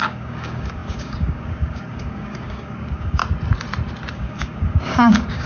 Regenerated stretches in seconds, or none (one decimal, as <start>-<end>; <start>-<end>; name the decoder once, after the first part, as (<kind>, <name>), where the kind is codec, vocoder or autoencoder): 0.0-3.2 (codec, DAC); 4.1-5.5